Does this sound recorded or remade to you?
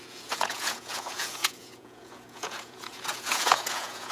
remade